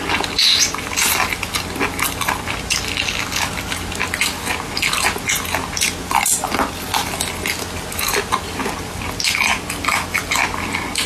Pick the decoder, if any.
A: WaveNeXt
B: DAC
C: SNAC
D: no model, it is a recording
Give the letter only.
D